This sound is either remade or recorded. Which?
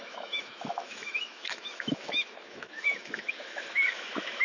remade